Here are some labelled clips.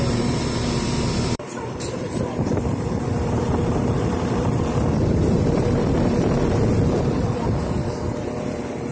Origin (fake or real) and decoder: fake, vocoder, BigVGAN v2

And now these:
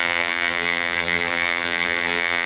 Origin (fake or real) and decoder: fake, vocoder, BigVGAN v2